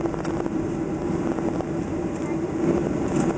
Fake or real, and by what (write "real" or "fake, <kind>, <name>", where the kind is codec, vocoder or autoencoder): real